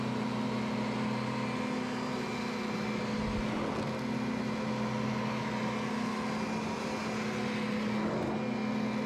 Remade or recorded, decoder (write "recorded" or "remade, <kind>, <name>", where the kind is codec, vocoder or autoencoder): recorded